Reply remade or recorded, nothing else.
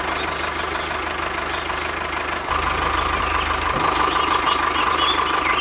recorded